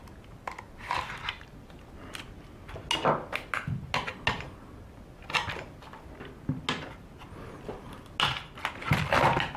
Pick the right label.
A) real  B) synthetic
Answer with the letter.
A